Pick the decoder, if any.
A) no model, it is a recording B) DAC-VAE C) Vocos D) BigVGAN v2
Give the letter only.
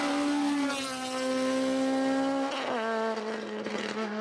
A